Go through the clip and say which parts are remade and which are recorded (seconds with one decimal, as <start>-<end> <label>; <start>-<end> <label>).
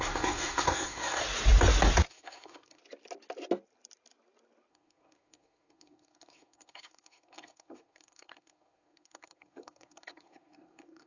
0.0-1.2 remade; 1.2-2.1 recorded; 2.1-2.8 remade; 2.8-4.7 recorded; 4.7-11.1 remade